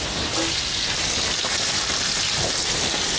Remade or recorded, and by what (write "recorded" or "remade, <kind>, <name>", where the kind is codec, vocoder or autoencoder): recorded